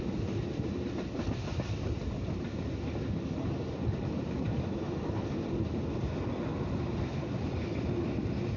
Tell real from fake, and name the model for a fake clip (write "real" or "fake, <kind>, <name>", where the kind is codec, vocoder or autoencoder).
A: real